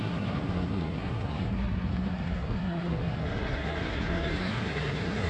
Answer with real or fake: fake